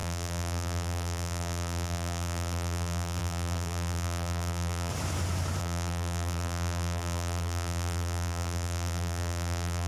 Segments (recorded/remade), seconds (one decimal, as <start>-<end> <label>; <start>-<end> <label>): 0.0-4.9 remade; 4.9-5.6 recorded; 5.6-9.9 remade

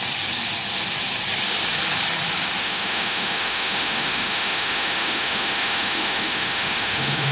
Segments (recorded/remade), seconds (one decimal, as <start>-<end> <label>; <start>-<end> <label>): 0.0-2.6 recorded; 2.6-7.3 remade

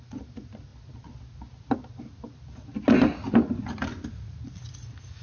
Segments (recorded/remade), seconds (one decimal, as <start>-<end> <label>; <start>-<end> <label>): 0.0-5.2 recorded

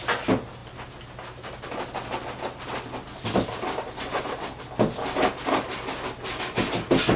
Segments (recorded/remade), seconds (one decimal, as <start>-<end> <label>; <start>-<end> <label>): 0.0-7.2 recorded

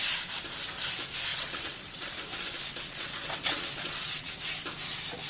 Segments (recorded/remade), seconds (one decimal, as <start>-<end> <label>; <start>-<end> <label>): 0.0-1.3 recorded; 1.3-4.3 remade; 4.3-5.3 recorded

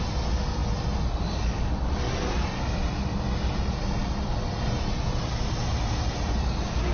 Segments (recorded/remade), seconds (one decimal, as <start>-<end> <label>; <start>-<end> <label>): 0.0-4.0 recorded; 4.0-4.8 remade; 4.8-5.6 recorded; 5.6-6.9 remade

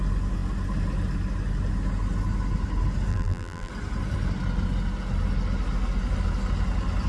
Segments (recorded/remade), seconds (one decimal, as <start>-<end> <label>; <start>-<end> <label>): 0.0-3.1 recorded; 3.1-3.7 remade; 3.7-7.1 recorded